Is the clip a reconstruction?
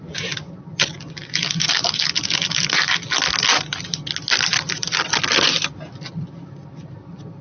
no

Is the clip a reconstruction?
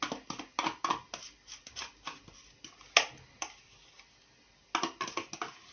no